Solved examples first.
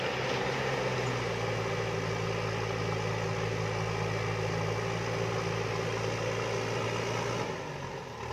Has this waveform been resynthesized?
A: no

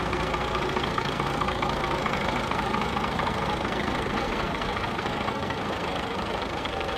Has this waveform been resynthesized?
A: yes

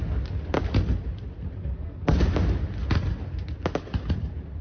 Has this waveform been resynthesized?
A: no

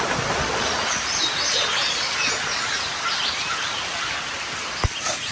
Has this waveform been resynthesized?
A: no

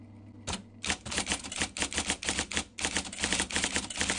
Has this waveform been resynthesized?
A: no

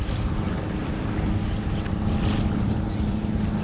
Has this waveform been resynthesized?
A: no